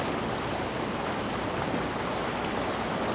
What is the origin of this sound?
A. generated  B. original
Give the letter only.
B